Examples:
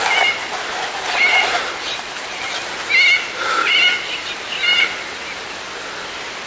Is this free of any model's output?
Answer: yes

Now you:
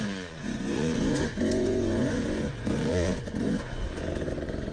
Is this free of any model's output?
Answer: no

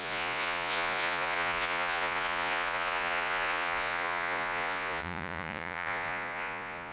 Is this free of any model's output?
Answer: no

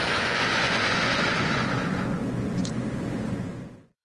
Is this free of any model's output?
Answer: no